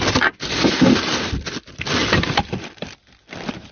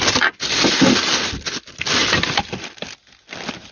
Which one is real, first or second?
second